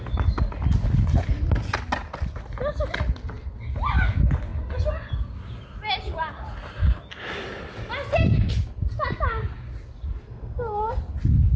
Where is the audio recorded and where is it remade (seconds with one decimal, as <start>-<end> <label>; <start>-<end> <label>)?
0.0-10.2 recorded; 10.2-11.0 remade; 11.0-11.6 recorded